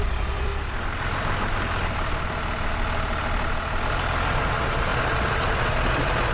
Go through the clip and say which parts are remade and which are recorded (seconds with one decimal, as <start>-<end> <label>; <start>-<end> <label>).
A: 0.0-0.5 remade; 0.5-4.3 recorded; 4.3-6.3 remade